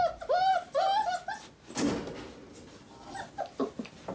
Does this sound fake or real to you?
real